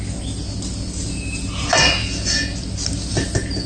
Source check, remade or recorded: recorded